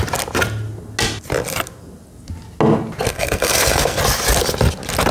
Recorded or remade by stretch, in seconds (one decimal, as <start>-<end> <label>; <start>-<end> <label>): 0.0-3.1 recorded; 3.1-4.0 remade; 4.0-5.1 recorded

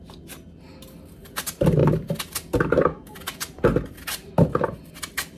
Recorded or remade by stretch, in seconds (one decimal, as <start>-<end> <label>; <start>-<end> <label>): 0.0-5.4 recorded

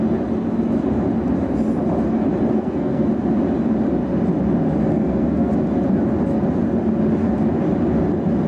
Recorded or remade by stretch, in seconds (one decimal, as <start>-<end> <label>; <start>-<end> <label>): 0.0-2.5 recorded; 2.5-3.1 remade; 3.1-4.9 recorded; 4.9-5.5 remade; 5.5-8.5 recorded

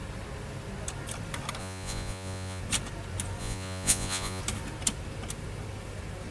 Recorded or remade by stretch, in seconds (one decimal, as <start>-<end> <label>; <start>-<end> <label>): 0.0-1.6 recorded; 1.6-2.6 remade; 2.6-3.4 recorded; 3.4-4.4 remade; 4.4-6.3 recorded

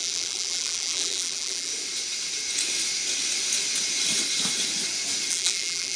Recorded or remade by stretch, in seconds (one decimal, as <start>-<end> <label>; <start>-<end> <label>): 0.0-1.7 remade; 1.7-5.3 recorded; 5.3-6.0 remade

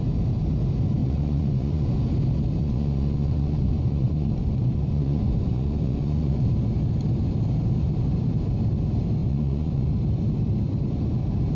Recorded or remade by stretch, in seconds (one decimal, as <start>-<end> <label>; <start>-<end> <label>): 0.0-1.0 recorded; 1.0-1.9 remade; 1.9-2.6 recorded; 2.6-6.5 remade; 6.5-9.2 recorded; 9.2-9.9 remade; 9.9-11.6 recorded